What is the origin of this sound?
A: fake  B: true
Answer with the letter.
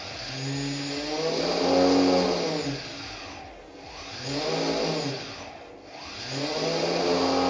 B